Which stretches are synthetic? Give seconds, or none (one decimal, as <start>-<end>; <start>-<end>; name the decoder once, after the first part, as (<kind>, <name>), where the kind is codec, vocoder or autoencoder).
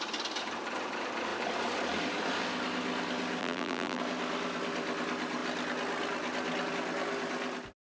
3.4-4.0 (vocoder, BigVGAN v2)